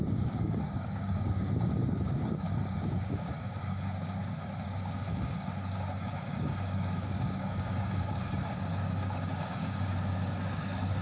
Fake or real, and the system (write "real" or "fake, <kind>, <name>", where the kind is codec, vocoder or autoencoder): fake, codec, DAC